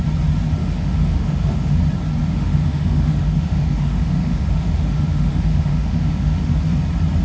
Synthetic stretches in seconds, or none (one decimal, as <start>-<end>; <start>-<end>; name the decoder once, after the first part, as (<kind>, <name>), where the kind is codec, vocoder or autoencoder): 0.6-1.8 (autoencoder, DAC-VAE); 2.2-6.5